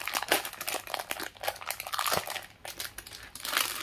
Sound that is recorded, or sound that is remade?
recorded